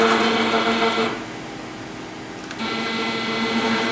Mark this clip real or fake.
real